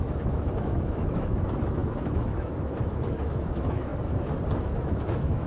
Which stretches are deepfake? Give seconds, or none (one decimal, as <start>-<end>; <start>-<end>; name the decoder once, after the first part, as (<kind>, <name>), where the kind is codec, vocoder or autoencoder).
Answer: 0.0-3.9 (autoencoder, DAC-VAE); 4.6-5.5